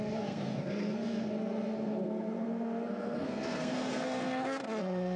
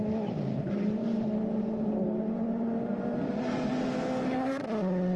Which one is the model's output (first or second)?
first